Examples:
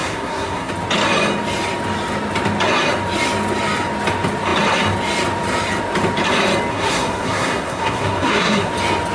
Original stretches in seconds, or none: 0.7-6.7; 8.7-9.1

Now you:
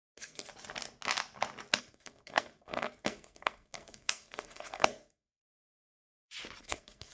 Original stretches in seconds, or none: 0.5-1.8; 5.9-6.6